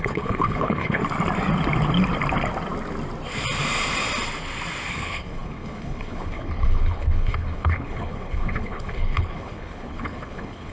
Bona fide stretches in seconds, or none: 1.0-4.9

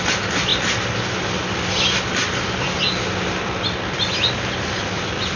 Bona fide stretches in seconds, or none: 0.0-5.4

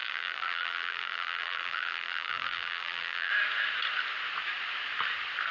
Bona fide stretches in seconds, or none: 3.3-5.5

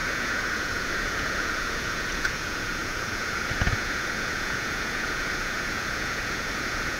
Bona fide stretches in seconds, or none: none

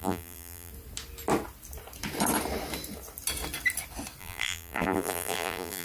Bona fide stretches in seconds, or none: 0.7-4.2

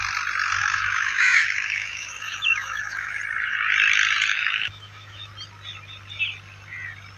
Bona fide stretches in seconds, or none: 0.0-0.6; 3.2-4.3; 5.3-7.2

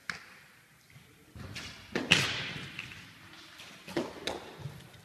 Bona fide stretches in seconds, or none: 0.0-5.0